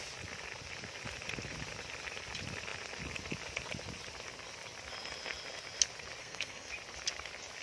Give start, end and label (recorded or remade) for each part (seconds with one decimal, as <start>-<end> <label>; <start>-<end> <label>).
0.0-6.2 recorded; 6.2-6.7 remade; 6.7-7.6 recorded